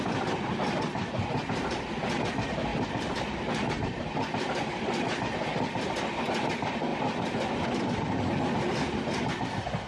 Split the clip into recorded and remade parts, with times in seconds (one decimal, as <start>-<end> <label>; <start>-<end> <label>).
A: 0.0-2.7 recorded; 2.7-4.0 remade; 4.0-9.9 recorded